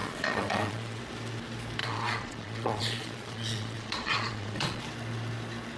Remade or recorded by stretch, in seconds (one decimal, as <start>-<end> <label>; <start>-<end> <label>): 0.0-1.0 remade; 1.0-1.8 recorded; 1.8-4.8 remade; 4.8-5.8 recorded